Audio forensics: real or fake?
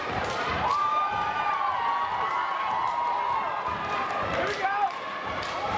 fake